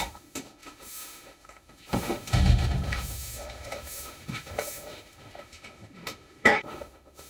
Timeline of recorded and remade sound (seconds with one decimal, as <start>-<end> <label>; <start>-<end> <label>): 0.0-7.3 remade